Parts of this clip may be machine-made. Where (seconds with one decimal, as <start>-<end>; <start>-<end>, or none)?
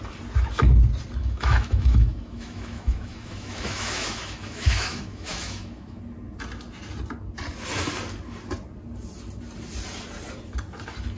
1.2-6.0